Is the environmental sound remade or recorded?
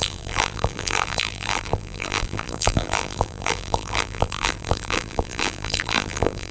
remade